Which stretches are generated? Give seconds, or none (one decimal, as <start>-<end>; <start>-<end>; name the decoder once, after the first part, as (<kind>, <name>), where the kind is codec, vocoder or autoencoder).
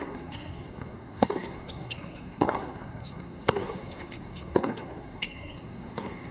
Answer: 0.0-6.3 (codec, SNAC)